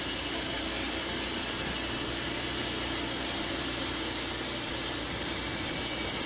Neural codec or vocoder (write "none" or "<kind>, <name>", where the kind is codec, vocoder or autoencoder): none